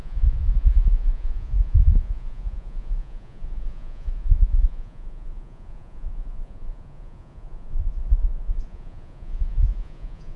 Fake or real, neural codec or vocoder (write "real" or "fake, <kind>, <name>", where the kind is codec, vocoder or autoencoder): fake, vocoder, Vocos